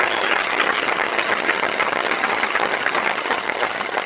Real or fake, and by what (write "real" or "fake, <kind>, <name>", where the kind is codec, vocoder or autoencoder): fake, vocoder, HiFi-GAN